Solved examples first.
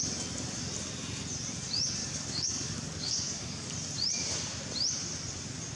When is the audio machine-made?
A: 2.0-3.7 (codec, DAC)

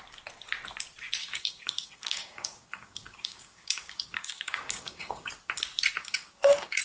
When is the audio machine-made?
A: 1.2-5.3 (codec, DAC); 6.0-6.8

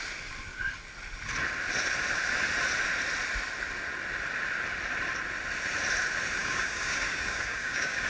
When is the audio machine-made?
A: 6.4-8.1 (codec, DAC)

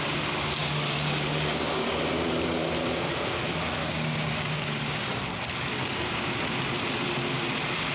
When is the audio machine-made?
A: 0.6-2.0 (codec, DAC); 3.8-5.2; 5.8-6.4

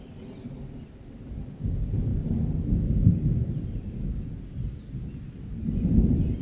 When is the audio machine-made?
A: none

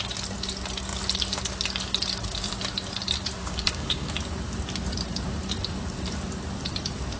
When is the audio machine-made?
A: 3.4-4.1 (codec, DAC)